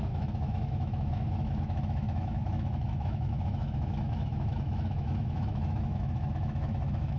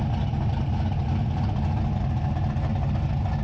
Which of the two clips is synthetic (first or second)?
first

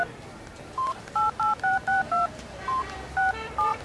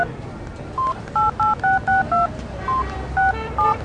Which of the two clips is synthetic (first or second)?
first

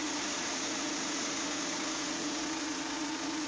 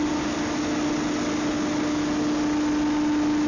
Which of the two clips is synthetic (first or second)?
first